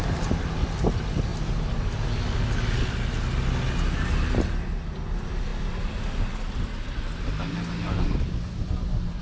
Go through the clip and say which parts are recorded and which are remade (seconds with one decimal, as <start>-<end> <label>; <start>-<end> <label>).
0.0-9.2 recorded